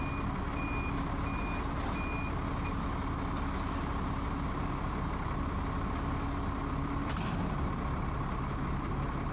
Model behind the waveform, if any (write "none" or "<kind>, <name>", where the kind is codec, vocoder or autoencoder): none